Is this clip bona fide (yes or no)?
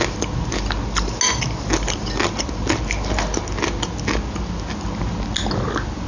yes